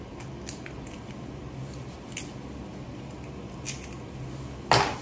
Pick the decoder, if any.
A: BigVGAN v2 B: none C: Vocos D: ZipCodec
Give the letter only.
B